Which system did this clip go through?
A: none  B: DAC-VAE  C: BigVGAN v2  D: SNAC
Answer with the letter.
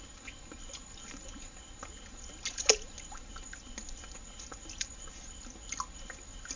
A